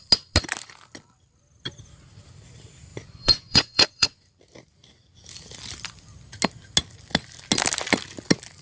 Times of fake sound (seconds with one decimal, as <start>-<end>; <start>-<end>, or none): 2.9-4.2